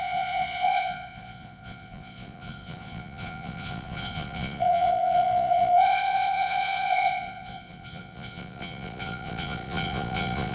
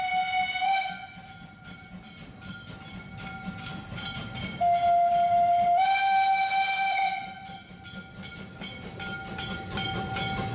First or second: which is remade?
first